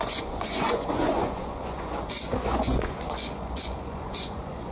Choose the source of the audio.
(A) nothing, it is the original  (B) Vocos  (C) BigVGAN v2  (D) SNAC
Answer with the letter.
B